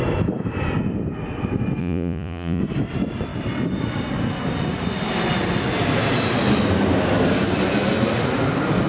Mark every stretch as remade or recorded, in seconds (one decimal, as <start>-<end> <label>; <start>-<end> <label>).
0.0-1.8 recorded; 1.8-2.6 remade; 2.6-8.9 recorded